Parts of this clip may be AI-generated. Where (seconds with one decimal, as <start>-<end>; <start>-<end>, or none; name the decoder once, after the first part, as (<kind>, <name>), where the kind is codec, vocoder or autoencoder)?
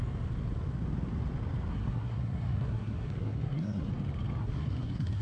1.7-3.9 (codec, SNAC); 4.4-5.2